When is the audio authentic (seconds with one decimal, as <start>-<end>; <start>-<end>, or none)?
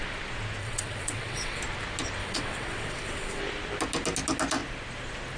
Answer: 0.0-0.6; 1.6-2.2; 3.4-5.4